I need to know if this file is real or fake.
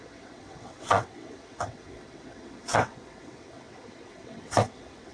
fake